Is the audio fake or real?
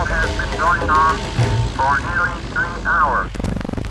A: real